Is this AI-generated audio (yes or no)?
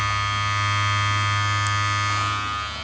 no